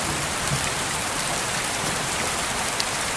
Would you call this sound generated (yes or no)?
yes